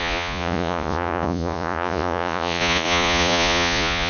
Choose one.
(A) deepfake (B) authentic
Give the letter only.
A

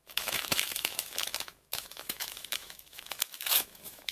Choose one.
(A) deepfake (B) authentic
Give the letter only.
A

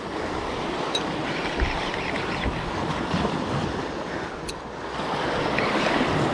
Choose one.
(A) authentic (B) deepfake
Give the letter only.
A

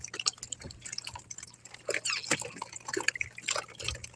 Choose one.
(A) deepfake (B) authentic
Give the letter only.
B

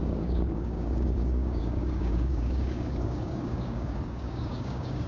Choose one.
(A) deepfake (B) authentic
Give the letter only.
A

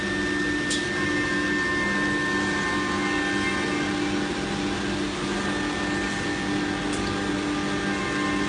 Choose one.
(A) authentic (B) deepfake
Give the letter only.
A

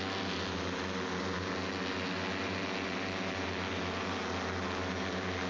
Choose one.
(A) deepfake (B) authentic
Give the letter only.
B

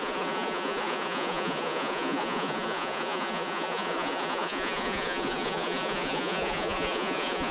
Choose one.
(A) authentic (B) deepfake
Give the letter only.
B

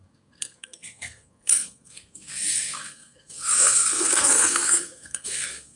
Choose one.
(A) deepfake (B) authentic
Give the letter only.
A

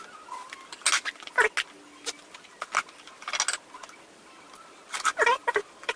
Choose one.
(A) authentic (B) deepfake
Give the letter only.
A